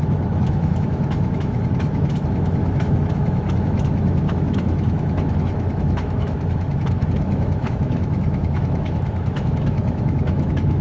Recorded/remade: remade